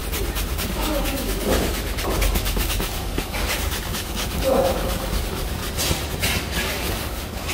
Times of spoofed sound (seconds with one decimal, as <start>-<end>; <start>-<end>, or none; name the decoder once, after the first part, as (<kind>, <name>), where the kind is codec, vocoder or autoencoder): 0.5-5.6 (codec, DAC); 6.4-7.5